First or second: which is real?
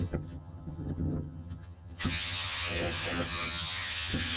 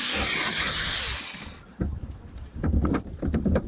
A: second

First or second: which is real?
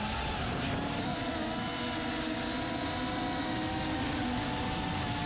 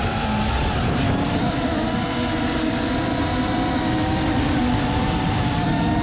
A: first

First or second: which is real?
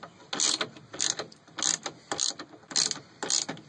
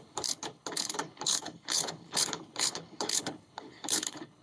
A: first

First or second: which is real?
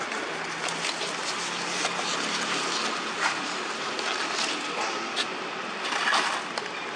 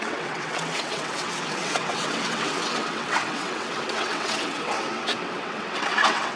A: first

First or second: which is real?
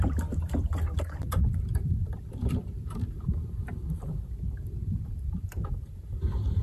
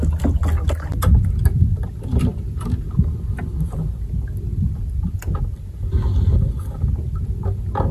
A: second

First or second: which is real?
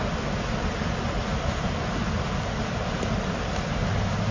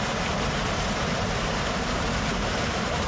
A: first